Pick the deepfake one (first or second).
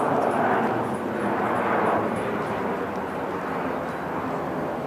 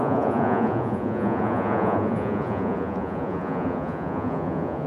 second